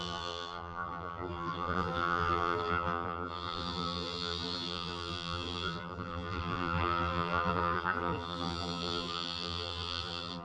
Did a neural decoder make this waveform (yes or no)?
yes